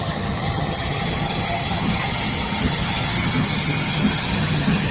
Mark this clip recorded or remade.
remade